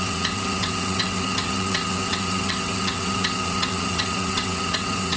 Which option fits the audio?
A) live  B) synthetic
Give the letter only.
B